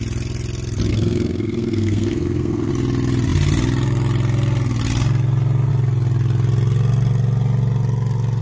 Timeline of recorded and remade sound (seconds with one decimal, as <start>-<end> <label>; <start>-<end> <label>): 0.0-0.9 recorded; 0.9-2.7 remade; 2.7-8.4 recorded